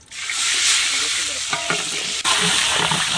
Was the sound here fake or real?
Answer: real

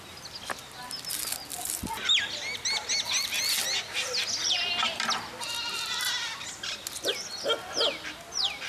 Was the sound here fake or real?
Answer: real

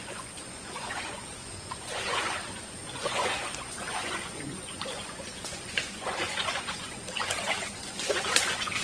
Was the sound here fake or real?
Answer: fake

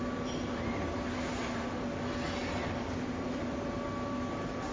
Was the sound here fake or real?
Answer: real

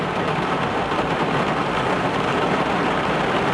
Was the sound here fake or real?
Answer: real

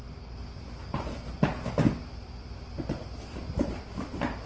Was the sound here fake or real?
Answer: real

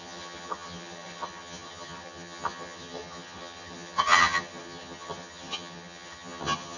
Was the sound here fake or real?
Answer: fake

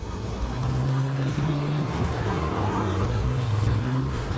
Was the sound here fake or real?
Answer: fake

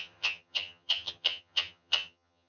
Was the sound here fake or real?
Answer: fake